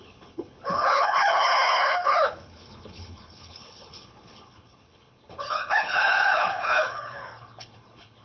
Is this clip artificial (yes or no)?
yes